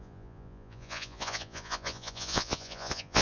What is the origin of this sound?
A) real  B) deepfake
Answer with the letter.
B